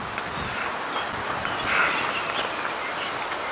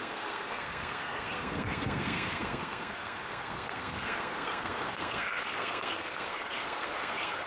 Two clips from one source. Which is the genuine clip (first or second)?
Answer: first